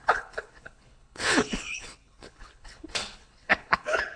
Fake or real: fake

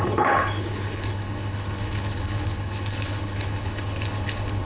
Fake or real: fake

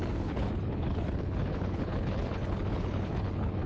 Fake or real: fake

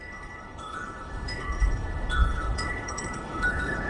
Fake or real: fake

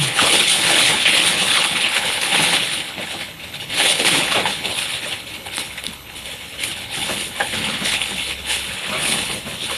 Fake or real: fake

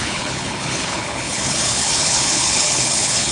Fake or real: fake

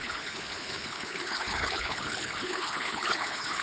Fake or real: fake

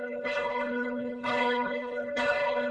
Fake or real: fake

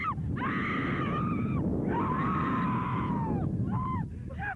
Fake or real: real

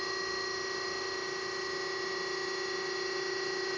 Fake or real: real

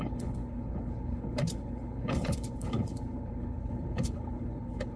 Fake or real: fake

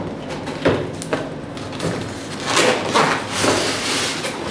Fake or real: real